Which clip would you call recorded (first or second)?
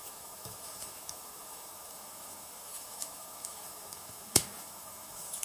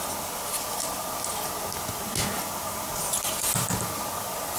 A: second